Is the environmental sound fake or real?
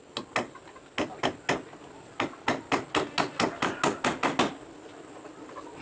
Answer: real